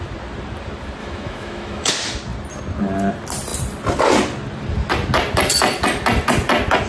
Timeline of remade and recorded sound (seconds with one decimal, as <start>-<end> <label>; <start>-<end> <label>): 0.0-1.0 recorded; 1.0-1.9 remade; 1.9-6.9 recorded